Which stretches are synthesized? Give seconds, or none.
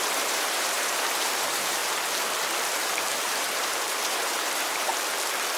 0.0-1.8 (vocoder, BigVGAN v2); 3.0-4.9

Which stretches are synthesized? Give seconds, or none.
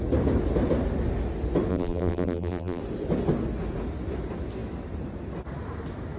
1.7-2.8 (vocoder, BigVGAN v2)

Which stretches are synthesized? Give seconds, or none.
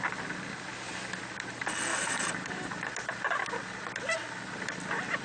1.9-2.9 (vocoder, BigVGAN v2)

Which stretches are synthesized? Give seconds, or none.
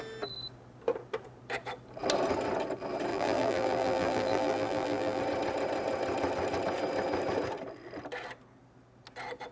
3.1-5.2 (vocoder, BigVGAN v2)